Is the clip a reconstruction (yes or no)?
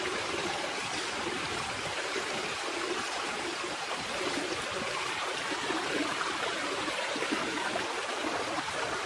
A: yes